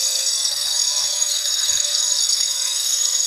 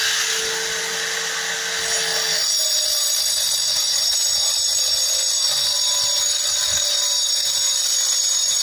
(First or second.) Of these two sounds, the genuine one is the second